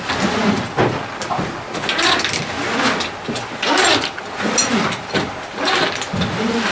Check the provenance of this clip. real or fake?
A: real